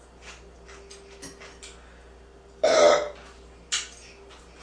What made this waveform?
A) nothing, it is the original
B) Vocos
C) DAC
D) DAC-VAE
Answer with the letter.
A